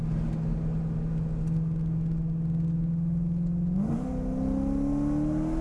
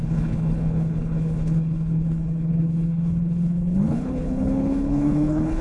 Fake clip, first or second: second